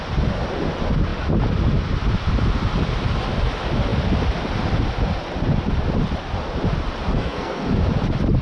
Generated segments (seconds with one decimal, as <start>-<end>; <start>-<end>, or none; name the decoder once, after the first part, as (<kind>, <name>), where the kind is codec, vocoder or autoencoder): 7.1-7.7 (codec, SNAC)